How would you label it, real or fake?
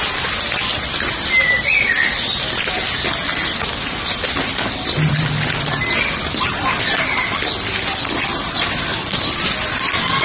real